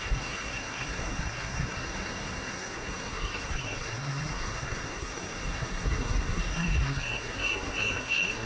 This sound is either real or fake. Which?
fake